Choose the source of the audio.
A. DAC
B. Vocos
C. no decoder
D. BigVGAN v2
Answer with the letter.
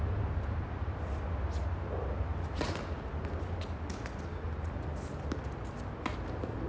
C